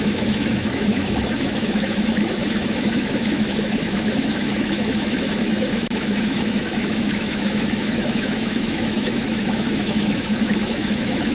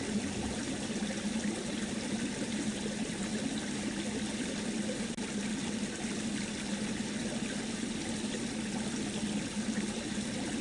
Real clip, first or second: second